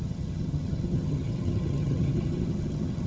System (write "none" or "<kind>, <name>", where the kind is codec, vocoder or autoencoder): vocoder, HiFi-GAN